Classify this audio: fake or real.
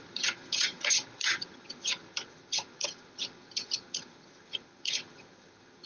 fake